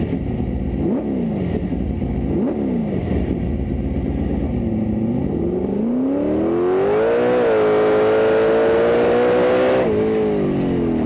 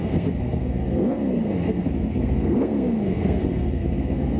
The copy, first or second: second